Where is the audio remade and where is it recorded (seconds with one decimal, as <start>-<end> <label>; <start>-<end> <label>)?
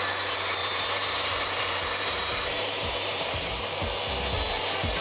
0.0-0.6 recorded; 0.6-3.6 remade; 3.6-5.0 recorded